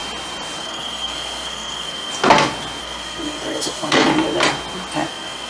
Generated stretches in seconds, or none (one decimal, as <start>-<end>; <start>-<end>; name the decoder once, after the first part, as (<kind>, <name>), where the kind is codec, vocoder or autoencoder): 0.6-2.1 (codec, SNAC); 2.8-4.1; 5.1-5.5